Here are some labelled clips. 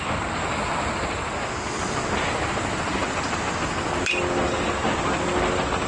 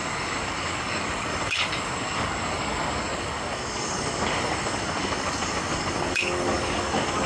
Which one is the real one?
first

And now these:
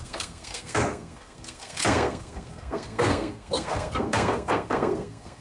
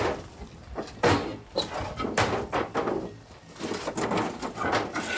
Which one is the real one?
second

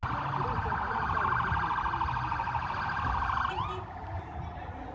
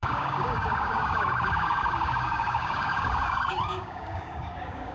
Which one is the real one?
first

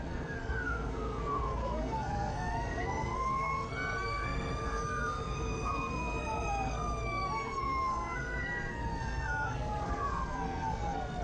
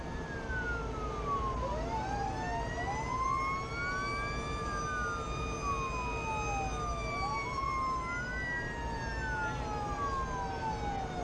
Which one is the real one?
second